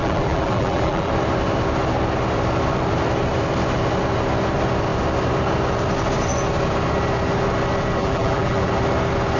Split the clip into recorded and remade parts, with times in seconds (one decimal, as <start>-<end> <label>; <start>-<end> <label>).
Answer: 0.0-1.1 remade; 1.1-8.0 recorded; 8.0-8.7 remade; 8.7-9.4 recorded